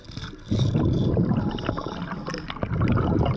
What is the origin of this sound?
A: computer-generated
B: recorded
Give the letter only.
B